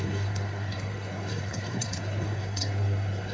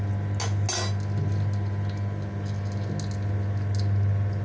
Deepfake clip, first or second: first